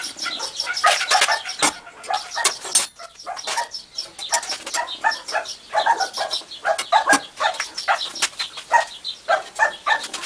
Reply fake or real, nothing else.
real